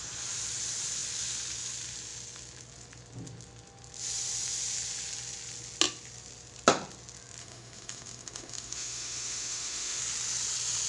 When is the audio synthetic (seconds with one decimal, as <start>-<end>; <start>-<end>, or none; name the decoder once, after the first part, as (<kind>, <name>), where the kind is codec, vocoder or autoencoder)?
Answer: 7.4-10.0 (autoencoder, DAC-VAE)